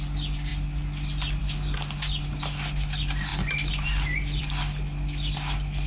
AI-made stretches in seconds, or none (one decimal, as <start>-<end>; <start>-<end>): none